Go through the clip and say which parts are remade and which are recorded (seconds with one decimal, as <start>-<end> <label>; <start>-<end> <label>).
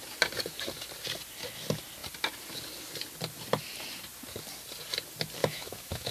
0.0-5.4 recorded; 5.4-6.1 remade